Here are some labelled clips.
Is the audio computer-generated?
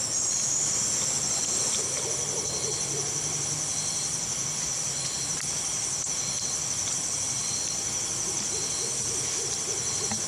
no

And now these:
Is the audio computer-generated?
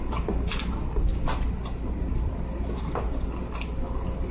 no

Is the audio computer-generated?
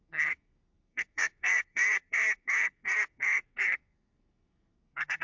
yes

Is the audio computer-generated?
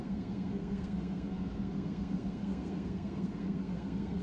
yes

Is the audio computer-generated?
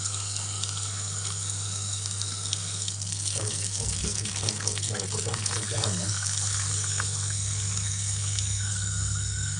yes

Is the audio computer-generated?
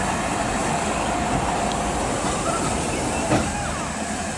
no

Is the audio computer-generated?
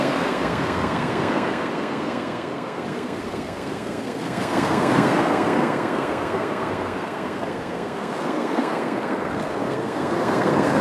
yes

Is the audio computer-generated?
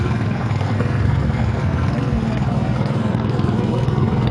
yes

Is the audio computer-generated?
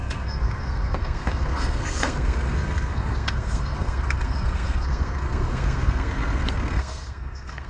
yes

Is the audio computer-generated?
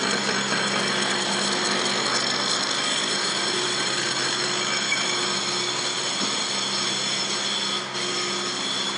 no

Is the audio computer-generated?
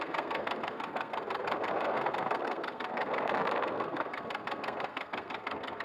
yes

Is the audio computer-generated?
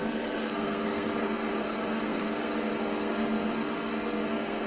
yes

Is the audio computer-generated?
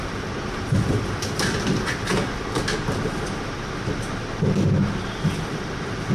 no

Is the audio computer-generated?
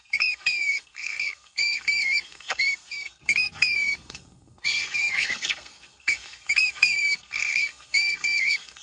yes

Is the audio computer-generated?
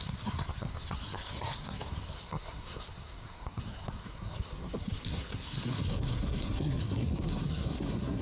yes